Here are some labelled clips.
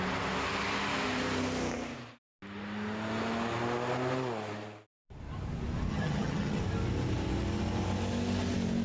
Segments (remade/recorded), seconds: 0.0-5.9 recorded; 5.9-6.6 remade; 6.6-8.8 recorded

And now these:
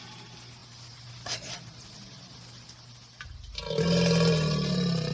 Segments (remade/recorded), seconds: 0.0-5.1 recorded

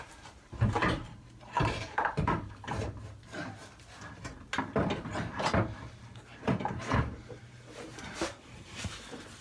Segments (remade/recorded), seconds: 0.0-3.6 remade; 3.6-5.1 recorded; 5.1-9.4 remade